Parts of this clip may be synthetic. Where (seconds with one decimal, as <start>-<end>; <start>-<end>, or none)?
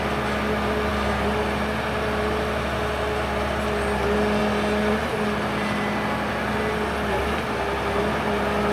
none